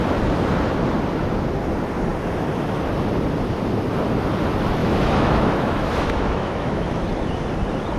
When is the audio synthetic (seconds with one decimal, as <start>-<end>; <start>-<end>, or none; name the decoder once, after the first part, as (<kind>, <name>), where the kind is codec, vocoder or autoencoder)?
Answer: 4.8-7.1 (autoencoder, DAC-VAE)